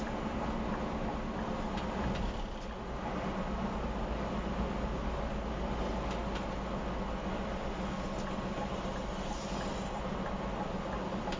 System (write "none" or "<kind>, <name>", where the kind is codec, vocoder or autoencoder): none